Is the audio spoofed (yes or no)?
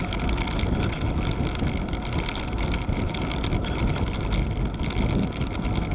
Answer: no